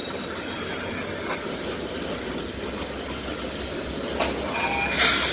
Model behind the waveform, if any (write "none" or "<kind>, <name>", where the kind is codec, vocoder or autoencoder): none